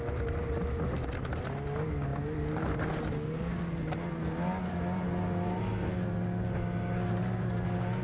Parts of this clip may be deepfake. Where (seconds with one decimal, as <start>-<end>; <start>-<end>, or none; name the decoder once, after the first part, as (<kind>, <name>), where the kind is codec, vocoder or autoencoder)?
none

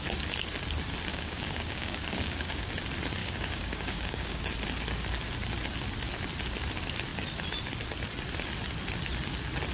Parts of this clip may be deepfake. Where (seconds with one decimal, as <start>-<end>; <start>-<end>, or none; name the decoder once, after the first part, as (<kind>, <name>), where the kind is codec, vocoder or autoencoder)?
1.1-2.7 (codec, DAC); 3.2-4.4

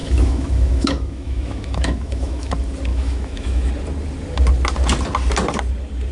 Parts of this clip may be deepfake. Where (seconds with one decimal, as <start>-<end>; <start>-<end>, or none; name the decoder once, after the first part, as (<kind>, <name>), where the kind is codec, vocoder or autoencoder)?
0.0-2.5 (autoencoder, DAC-VAE); 2.9-3.7